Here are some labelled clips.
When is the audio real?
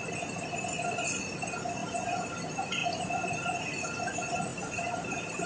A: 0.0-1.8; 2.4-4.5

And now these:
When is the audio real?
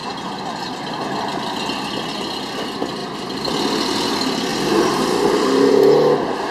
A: 0.0-3.0; 4.1-4.5; 5.7-6.5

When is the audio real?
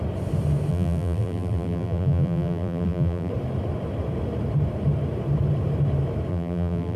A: 0.0-0.7; 3.3-6.3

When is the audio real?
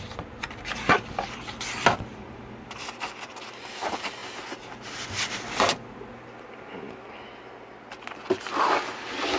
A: 0.0-9.4